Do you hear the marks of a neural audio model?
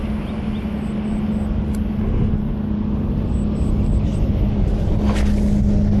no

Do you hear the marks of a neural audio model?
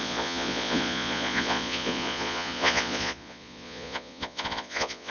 yes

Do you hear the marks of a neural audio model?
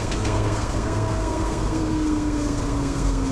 yes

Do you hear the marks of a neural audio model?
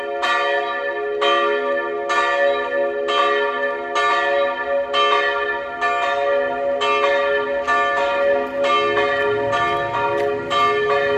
no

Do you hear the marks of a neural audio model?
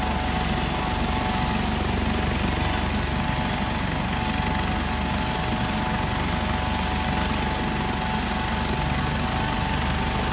no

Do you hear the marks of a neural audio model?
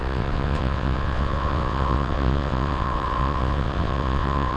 yes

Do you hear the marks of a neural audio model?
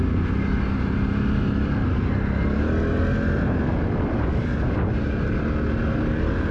no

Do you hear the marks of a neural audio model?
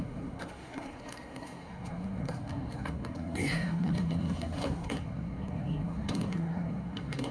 yes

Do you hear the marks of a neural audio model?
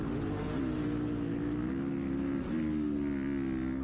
no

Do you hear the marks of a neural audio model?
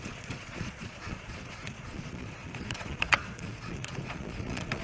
yes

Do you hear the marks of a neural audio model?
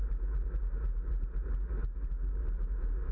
no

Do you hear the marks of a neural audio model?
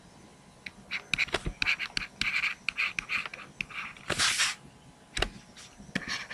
no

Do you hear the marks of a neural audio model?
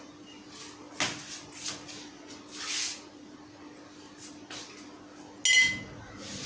no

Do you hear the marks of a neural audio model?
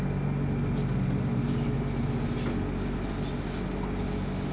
no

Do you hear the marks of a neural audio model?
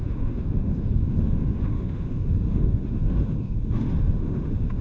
yes